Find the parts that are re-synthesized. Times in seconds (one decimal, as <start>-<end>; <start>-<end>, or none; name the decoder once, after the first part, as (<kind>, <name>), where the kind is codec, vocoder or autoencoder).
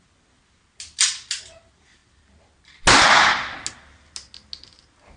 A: none